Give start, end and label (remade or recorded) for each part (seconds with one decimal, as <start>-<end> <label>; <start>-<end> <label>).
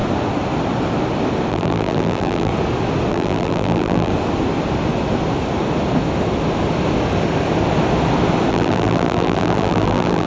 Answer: 0.0-1.5 recorded; 1.5-2.5 remade; 2.5-3.1 recorded; 3.1-4.1 remade; 4.1-8.5 recorded; 8.5-10.3 remade